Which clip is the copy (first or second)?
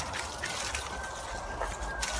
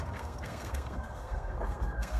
second